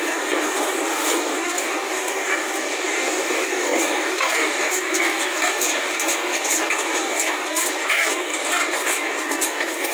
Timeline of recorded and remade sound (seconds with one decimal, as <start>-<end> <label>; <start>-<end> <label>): 0.0-9.9 remade